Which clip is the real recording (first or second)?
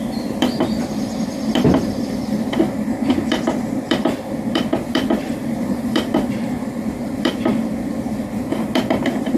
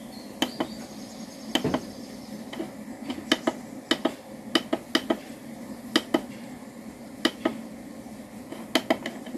second